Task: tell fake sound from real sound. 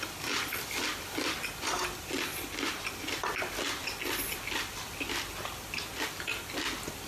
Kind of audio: real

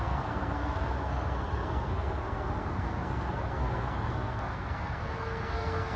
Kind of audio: fake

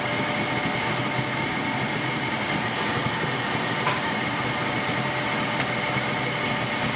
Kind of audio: real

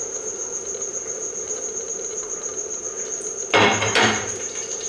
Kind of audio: fake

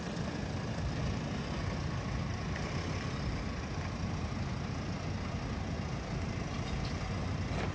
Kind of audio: real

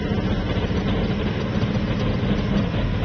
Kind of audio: real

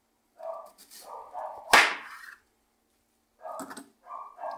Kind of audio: real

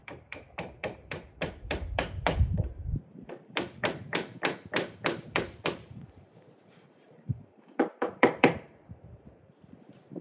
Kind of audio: fake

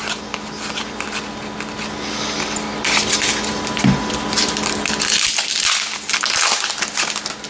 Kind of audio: real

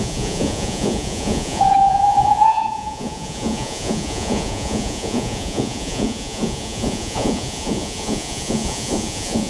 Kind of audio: fake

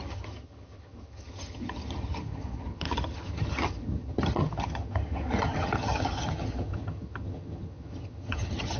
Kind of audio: fake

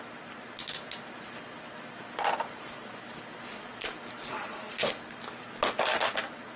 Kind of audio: real